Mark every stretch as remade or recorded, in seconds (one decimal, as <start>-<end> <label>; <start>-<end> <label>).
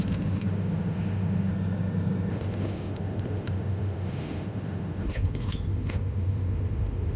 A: 0.0-1.5 remade; 1.5-2.3 recorded; 2.3-7.2 remade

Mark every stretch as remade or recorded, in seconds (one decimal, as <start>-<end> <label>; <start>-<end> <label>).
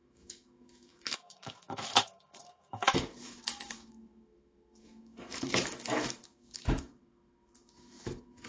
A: 0.0-8.5 remade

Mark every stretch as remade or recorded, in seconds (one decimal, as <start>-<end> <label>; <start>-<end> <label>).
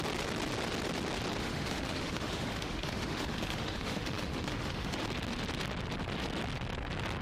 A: 0.0-1.4 recorded; 1.4-5.0 remade; 5.0-7.2 recorded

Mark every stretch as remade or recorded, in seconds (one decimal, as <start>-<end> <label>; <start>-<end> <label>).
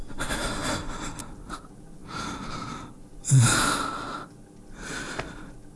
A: 0.0-5.8 recorded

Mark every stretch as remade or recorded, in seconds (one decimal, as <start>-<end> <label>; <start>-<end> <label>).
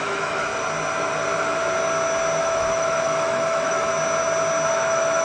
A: 0.0-0.5 remade; 0.5-2.4 recorded; 2.4-3.9 remade; 3.9-4.7 recorded; 4.7-5.2 remade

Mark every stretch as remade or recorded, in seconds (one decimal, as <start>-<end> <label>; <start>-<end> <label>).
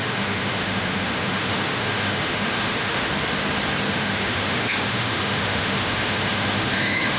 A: 0.0-3.1 remade; 3.1-3.9 recorded; 3.9-7.2 remade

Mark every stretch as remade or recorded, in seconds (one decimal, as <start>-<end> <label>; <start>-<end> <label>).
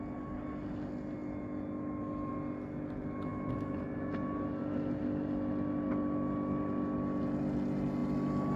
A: 0.0-8.6 recorded